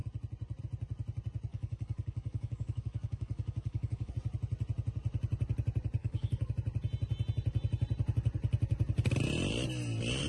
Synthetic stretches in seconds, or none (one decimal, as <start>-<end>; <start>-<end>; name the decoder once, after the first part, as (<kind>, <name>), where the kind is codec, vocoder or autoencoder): 1.5-4.1 (codec, DAC); 6.0-6.5